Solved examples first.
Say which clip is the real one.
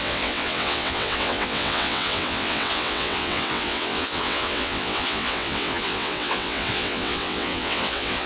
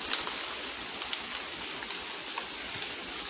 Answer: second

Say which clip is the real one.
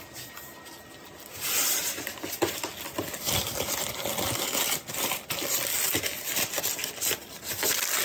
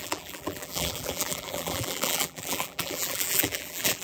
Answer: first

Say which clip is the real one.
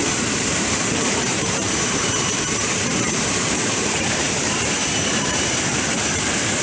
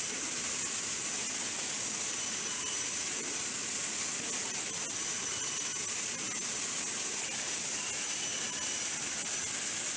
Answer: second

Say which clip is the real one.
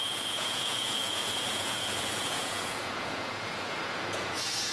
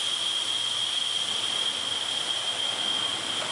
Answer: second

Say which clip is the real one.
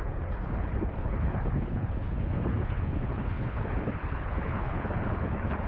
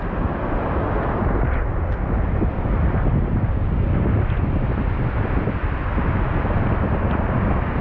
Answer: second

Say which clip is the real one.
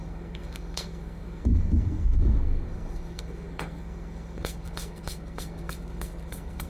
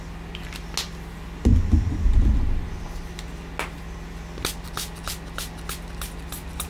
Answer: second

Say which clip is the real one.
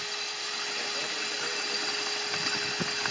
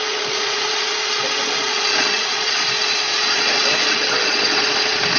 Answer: first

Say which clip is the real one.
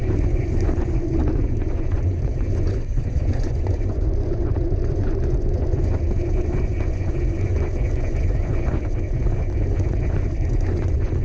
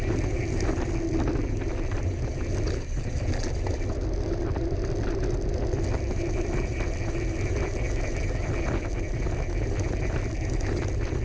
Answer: second